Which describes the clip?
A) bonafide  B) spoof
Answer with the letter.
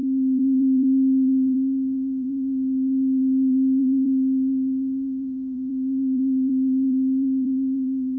B